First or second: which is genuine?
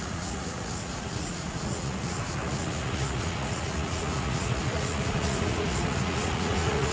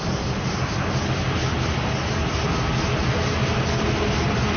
second